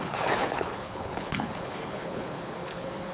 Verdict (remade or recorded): remade